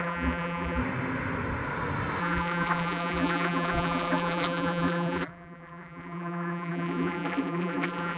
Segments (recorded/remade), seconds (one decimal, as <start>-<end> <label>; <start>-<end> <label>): 0.0-0.8 remade; 0.8-2.2 recorded; 2.2-8.2 remade